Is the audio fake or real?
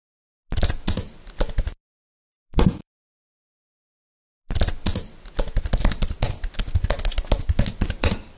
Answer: real